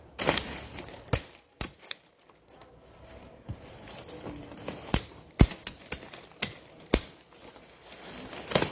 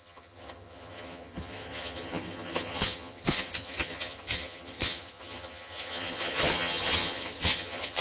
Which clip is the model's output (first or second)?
second